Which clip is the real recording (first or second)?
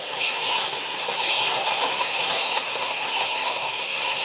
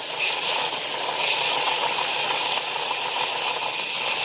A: second